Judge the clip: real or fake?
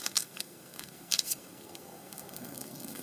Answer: fake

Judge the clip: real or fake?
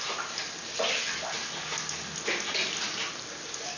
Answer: real